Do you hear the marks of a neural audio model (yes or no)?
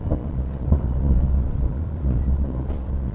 yes